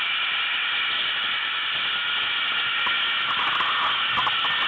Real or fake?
real